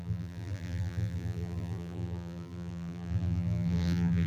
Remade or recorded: remade